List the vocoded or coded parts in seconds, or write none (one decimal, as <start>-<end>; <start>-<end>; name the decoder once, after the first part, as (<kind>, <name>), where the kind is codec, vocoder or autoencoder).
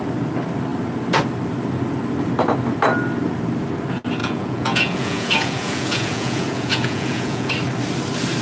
4.2-7.5 (vocoder, Vocos)